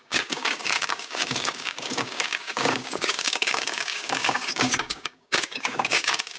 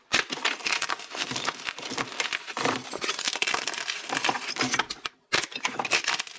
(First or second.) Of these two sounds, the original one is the second